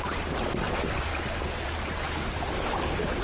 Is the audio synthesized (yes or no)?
no